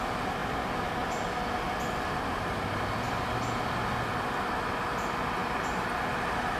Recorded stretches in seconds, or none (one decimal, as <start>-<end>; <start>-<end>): 0.0-5.4; 6.0-6.6